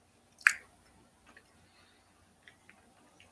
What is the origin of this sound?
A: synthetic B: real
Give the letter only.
B